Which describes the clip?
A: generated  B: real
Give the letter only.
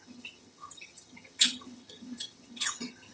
A